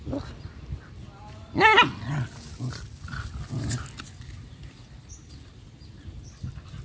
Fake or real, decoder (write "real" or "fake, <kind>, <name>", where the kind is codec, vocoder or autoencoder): real